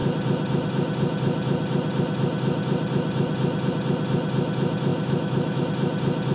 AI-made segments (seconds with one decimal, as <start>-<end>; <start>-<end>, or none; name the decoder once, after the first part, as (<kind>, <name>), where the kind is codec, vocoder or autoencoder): 4.9-5.6 (autoencoder, DAC-VAE)